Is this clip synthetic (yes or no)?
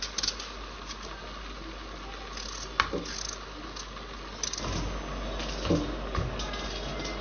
no